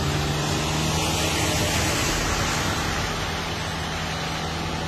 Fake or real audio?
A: real